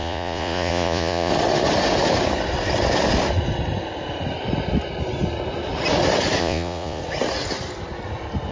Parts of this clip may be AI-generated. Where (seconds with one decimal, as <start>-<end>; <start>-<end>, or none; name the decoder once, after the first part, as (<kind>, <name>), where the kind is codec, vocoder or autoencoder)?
0.0-1.3 (vocoder, Vocos); 6.4-7.0